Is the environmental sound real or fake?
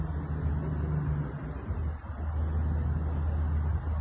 real